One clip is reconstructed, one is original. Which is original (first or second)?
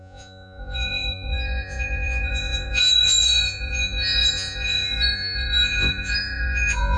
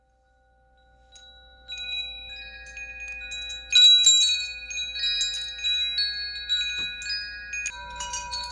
second